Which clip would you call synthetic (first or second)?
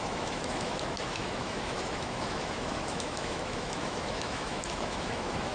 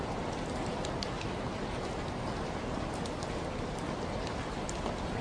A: first